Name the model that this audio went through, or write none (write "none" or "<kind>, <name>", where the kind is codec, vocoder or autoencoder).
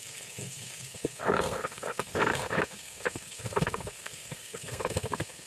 codec, SNAC